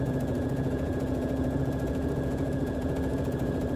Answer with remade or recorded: remade